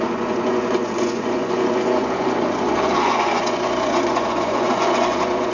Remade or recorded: remade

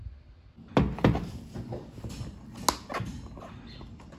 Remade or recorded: recorded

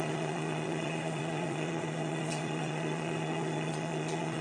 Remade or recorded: remade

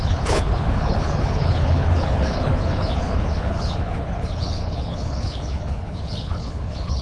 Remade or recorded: remade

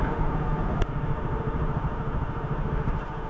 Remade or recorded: remade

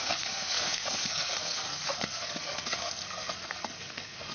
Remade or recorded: remade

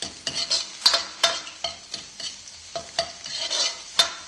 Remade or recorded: recorded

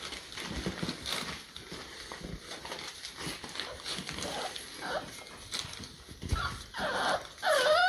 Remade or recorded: recorded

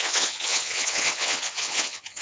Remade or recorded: remade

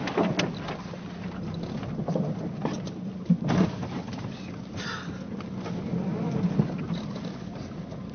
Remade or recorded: recorded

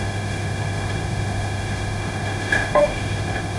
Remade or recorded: remade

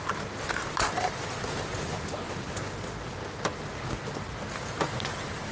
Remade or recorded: recorded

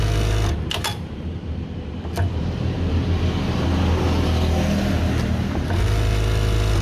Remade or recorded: recorded